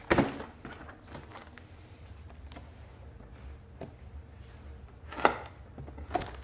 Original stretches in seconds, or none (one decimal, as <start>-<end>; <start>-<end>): 0.0-6.4